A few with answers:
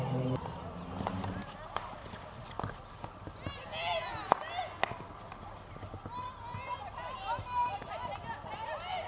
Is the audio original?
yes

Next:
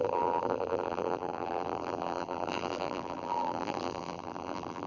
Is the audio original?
no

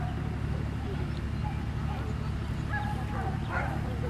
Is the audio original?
yes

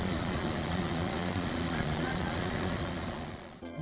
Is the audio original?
no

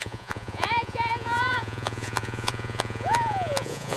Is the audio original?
no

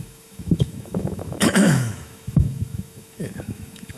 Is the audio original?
no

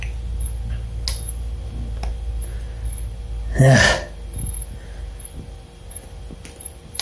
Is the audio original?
yes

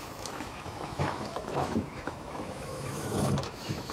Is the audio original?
no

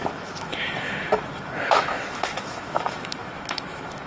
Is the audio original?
no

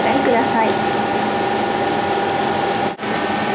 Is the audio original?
yes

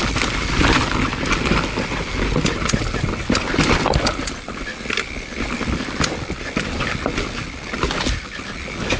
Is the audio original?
yes